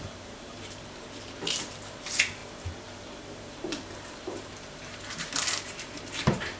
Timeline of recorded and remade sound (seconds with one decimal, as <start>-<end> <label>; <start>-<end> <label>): 0.0-2.4 remade; 2.4-3.2 recorded; 3.2-6.6 remade